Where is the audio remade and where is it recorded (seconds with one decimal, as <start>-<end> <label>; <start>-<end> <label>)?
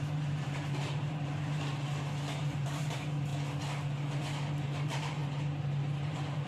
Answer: 0.0-1.7 remade; 1.7-2.4 recorded; 2.4-3.3 remade; 3.3-4.5 recorded; 4.5-6.5 remade